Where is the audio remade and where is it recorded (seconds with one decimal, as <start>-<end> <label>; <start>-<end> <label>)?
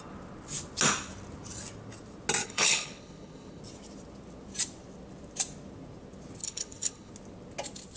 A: 0.0-2.4 recorded; 2.4-3.6 remade; 3.6-6.4 recorded; 6.4-7.1 remade; 7.1-8.0 recorded